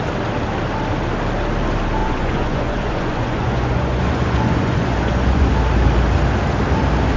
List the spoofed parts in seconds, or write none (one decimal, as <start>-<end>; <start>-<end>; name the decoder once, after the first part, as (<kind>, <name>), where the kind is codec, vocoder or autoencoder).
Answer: 2.0-5.5 (vocoder, Vocos)